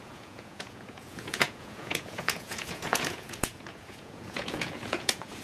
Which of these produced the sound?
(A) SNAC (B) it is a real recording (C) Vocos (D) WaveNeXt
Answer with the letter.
C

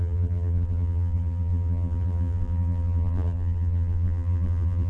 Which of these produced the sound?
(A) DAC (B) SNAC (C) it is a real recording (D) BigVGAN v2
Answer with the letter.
D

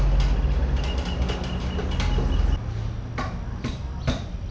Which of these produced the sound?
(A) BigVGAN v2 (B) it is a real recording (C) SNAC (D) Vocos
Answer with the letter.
B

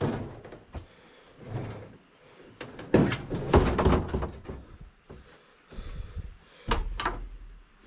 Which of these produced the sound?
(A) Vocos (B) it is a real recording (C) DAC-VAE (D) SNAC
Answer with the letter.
B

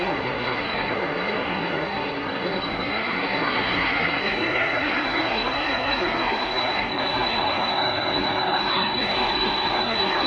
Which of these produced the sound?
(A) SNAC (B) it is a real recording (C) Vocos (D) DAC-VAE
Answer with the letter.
A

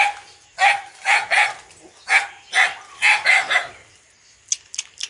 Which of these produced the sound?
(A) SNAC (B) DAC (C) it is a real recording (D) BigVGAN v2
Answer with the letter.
C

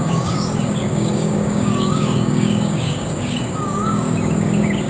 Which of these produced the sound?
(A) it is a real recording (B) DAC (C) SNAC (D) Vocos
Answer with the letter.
B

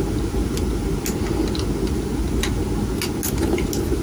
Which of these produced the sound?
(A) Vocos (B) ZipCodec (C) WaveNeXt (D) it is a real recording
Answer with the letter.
D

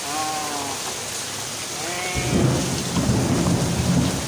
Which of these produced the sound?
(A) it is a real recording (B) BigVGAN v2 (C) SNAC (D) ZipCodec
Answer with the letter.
A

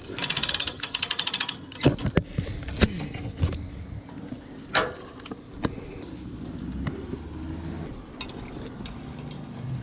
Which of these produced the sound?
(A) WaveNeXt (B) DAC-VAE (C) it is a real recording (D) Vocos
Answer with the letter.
C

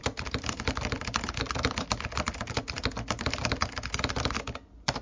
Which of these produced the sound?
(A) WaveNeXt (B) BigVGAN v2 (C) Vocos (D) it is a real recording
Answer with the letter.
D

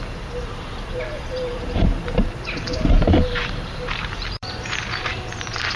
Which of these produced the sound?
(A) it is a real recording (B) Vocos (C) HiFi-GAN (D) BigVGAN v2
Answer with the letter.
D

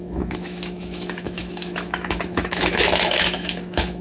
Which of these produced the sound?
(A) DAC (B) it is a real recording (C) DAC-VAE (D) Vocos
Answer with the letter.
C